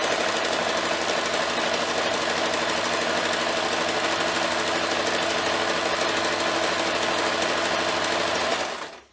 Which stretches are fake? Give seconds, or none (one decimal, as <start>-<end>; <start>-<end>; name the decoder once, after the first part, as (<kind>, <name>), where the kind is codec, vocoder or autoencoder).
none